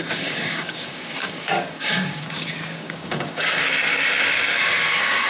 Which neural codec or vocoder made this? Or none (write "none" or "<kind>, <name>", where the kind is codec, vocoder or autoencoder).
codec, DAC